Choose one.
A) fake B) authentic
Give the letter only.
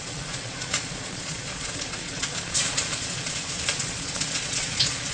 A